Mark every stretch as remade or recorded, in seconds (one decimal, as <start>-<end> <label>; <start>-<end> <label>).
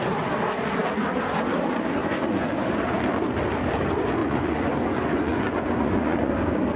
0.0-2.0 recorded; 2.0-2.5 remade; 2.5-4.2 recorded; 4.2-6.3 remade; 6.3-6.8 recorded